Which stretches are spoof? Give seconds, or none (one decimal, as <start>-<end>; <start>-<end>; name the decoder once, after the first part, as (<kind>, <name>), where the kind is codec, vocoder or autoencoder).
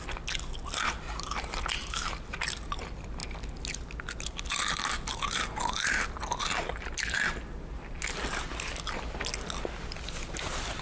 none